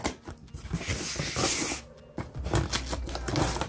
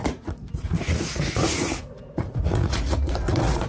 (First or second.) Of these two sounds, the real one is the first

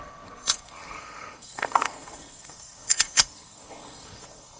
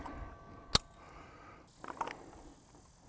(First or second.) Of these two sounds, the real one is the second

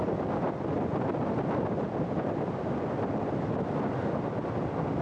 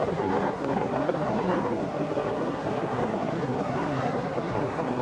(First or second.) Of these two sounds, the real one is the first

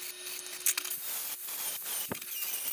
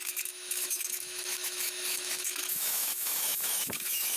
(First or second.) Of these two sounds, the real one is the first